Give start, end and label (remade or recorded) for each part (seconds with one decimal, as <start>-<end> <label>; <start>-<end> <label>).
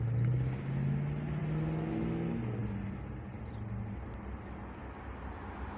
0.0-5.8 recorded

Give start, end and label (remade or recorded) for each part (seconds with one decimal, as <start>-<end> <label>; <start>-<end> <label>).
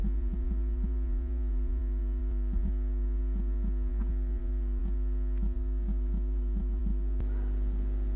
0.0-1.8 remade; 1.8-8.2 recorded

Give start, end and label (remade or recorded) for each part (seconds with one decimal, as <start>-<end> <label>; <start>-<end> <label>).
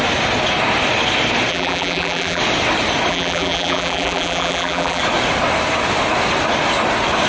0.0-1.5 recorded; 1.5-2.4 remade; 2.4-3.1 recorded; 3.1-5.0 remade; 5.0-7.3 recorded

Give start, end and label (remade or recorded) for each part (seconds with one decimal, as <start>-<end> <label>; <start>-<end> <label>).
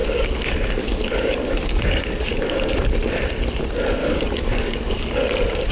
0.0-2.6 remade; 2.6-4.0 recorded; 4.0-5.3 remade; 5.3-5.7 recorded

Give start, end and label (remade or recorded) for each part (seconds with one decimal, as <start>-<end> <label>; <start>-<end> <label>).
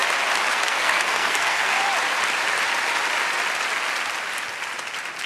0.0-0.5 recorded; 0.5-1.8 remade; 1.8-5.3 recorded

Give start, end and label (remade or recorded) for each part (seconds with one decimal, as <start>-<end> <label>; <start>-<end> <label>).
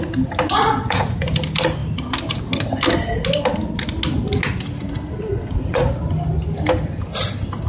0.0-0.7 recorded; 0.7-1.3 remade; 1.3-5.3 recorded; 5.3-5.9 remade; 5.9-7.7 recorded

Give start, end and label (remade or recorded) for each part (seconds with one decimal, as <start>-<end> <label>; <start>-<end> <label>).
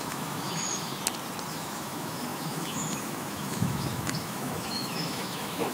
0.0-0.9 remade; 0.9-1.5 recorded; 1.5-5.7 remade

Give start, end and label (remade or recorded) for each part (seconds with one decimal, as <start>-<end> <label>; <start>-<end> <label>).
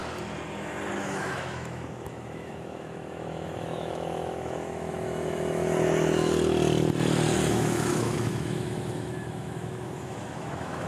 0.0-1.0 recorded; 1.0-5.6 remade; 5.6-7.5 recorded; 7.5-10.9 remade